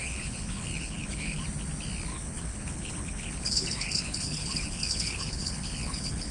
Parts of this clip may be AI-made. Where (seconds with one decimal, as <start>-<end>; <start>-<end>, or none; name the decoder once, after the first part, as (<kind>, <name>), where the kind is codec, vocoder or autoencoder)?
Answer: 0.0-1.4 (codec, HILCodec); 2.1-6.3